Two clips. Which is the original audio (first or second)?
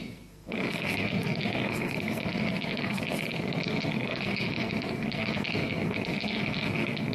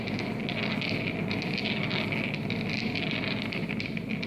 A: second